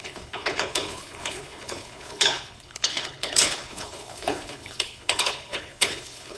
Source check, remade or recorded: remade